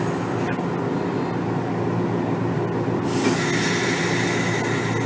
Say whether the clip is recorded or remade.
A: recorded